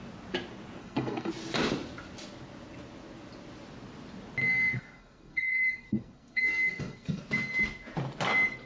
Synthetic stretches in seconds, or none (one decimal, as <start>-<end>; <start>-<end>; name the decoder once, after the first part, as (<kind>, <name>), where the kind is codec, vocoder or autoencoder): 0.8-1.3 (codec, SNAC); 4.4-7.2